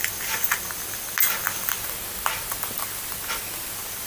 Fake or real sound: real